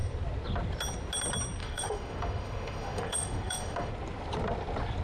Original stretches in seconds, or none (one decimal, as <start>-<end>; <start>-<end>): 0.0-1.6; 3.9-5.0